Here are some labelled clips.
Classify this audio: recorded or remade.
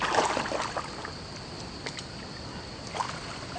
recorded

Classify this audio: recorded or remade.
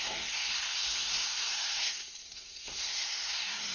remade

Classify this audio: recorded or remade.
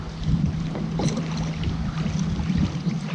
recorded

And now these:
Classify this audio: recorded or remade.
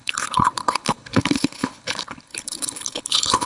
remade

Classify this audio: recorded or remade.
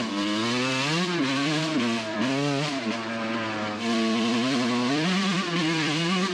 remade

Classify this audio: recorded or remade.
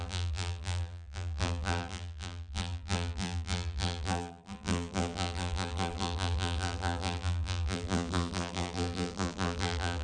remade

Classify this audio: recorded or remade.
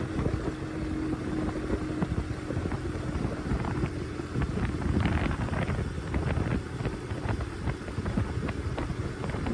recorded